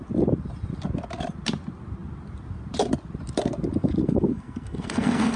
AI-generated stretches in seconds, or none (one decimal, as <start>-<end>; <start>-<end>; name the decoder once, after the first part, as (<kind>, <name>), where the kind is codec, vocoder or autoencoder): 4.0-5.4 (codec, SNAC)